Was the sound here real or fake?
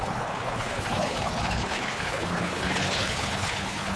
fake